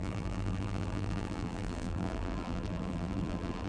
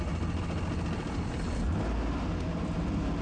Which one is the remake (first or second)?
first